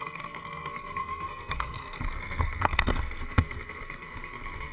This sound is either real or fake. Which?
fake